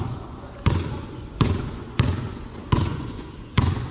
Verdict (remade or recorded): remade